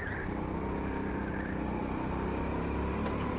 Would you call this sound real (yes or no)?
yes